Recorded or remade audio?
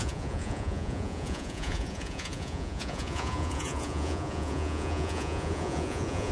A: remade